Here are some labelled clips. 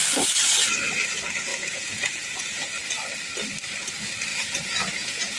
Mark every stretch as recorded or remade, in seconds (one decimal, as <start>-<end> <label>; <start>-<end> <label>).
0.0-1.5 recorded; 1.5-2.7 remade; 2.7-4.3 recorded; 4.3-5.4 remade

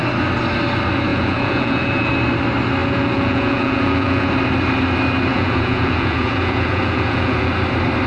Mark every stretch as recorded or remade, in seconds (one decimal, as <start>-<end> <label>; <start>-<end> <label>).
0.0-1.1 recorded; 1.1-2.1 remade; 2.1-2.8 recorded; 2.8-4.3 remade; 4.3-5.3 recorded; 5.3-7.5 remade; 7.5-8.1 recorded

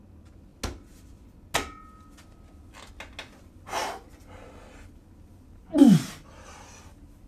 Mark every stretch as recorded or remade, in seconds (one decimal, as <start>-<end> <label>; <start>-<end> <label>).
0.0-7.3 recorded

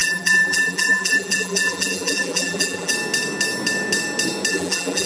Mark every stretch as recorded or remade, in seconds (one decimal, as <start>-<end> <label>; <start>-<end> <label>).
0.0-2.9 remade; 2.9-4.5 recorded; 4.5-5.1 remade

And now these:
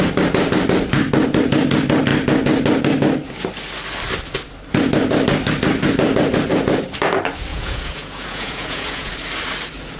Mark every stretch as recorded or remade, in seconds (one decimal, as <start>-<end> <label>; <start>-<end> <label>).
0.0-7.5 recorded; 7.5-9.1 remade; 9.1-10.0 recorded

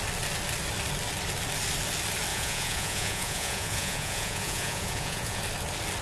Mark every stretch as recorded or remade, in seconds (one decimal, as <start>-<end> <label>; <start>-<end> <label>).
0.0-2.3 recorded; 2.3-5.4 remade; 5.4-6.0 recorded